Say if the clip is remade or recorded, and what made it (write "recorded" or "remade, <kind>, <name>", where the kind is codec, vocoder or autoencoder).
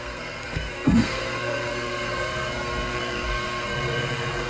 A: remade, codec, SNAC